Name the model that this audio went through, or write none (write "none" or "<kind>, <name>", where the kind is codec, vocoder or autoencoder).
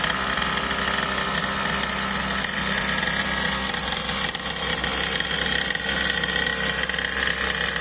none